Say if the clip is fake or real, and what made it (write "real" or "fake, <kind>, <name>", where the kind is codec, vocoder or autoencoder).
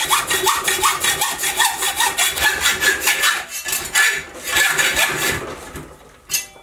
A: real